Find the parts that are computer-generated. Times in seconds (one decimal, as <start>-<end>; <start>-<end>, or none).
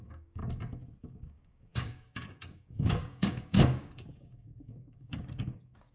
0.0-0.4; 1.0-5.9